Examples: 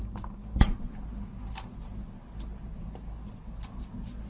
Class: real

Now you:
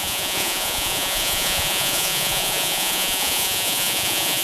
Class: fake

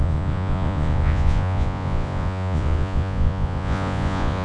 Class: fake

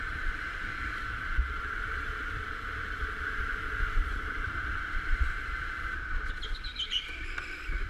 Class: fake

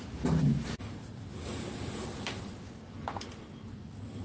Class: real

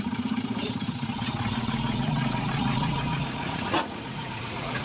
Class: fake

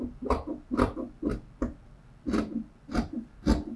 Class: real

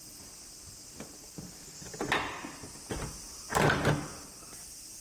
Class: real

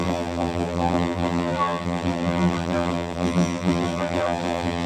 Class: fake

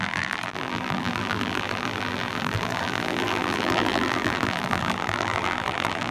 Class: fake